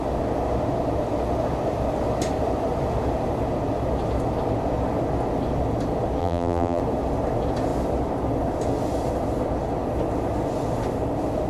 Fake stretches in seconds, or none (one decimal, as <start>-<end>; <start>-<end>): 6.2-6.8